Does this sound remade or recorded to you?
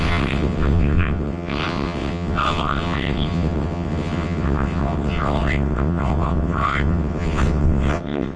remade